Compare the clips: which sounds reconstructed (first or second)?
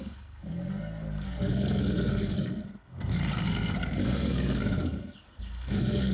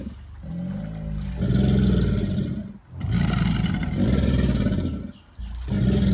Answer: first